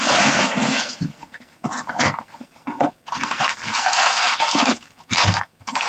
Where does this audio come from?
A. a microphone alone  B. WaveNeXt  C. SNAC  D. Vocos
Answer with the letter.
C